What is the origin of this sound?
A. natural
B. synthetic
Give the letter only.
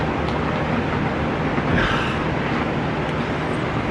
A